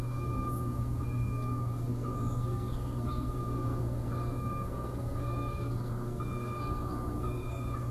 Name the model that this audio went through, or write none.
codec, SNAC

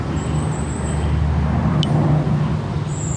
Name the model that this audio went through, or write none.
none